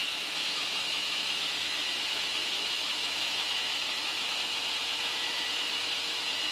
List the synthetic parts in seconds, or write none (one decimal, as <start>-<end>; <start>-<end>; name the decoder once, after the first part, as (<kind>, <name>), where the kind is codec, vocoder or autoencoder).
0.0-4.6 (autoencoder, DAC-VAE); 5.3-6.5